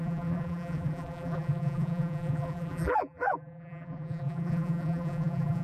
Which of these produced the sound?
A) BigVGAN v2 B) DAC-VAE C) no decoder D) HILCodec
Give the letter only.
A